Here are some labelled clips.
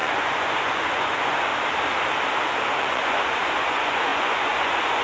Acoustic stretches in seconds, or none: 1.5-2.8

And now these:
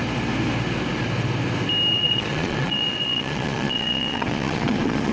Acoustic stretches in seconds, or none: 0.0-1.9

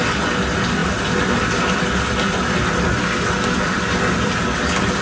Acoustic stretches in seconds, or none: 0.0-5.0

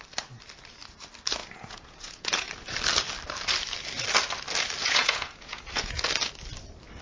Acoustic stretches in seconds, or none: 0.0-1.4; 2.5-4.8; 6.0-7.0

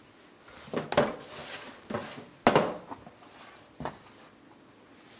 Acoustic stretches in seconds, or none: 0.0-5.2